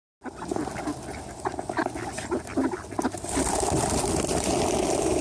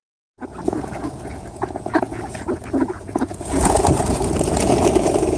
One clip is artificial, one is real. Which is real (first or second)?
first